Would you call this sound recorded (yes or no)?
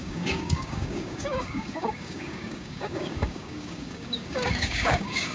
no